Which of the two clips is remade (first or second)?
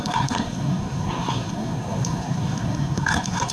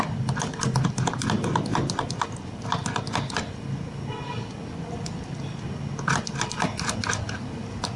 first